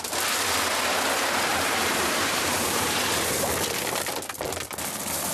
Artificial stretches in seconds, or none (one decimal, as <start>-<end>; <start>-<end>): 1.5-3.1